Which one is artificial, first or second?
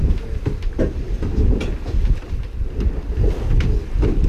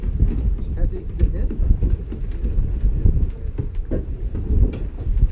second